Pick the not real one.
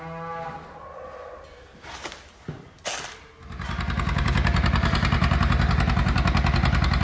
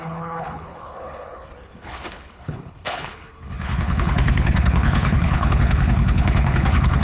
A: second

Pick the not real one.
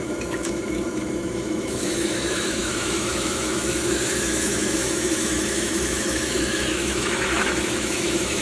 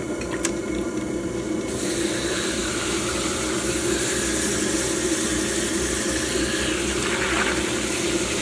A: first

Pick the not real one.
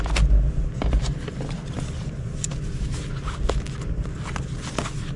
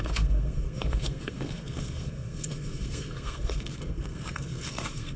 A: second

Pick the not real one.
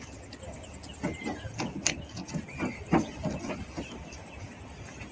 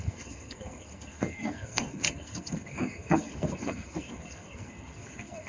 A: second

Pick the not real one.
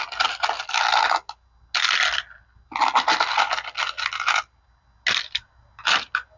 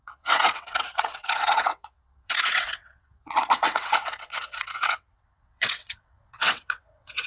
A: second